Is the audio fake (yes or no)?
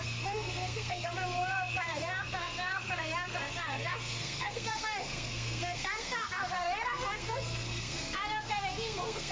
yes